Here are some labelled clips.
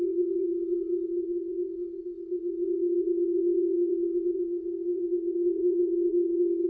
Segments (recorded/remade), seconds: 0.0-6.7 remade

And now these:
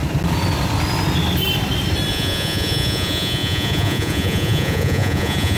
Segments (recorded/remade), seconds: 0.0-2.1 recorded; 2.1-5.6 remade

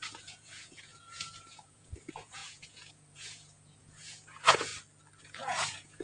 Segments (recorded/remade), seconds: 0.0-4.7 remade; 4.7-5.2 recorded; 5.2-6.0 remade

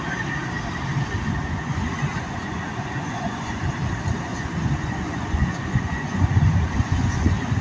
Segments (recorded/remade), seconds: 0.0-1.4 recorded; 1.4-3.6 remade; 3.6-4.3 recorded; 4.3-7.6 remade

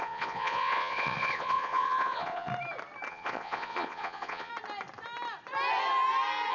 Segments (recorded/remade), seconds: 0.0-2.5 remade; 2.5-3.1 recorded; 3.1-4.5 remade; 4.5-6.5 recorded

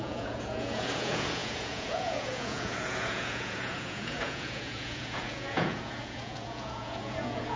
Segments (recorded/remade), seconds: 0.0-7.6 remade

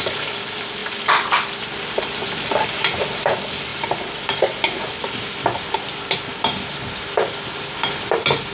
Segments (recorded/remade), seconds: 0.0-8.5 recorded